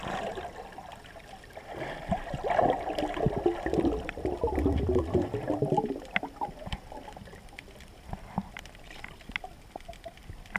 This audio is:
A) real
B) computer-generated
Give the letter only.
A